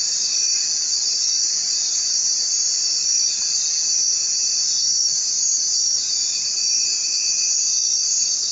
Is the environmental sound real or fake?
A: real